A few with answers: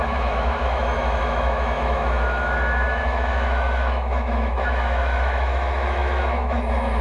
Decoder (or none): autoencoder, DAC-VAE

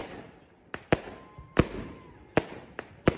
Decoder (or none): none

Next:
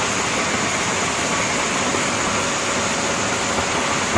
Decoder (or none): none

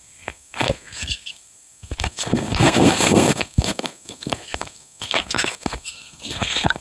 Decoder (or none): codec, SNAC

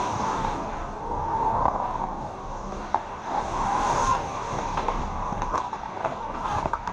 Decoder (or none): codec, DAC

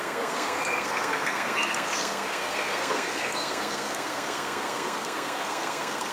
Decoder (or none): codec, SNAC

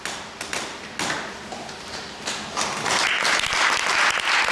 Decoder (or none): none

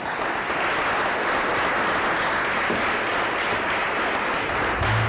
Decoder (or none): none